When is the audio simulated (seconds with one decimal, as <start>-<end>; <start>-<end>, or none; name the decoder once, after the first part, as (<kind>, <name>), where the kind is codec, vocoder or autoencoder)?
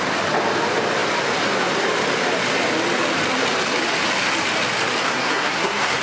5.1-6.0 (codec, SNAC)